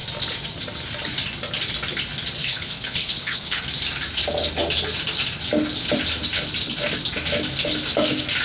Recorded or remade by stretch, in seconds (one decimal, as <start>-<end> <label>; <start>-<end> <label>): 0.0-2.4 recorded; 2.4-3.6 remade; 3.6-8.4 recorded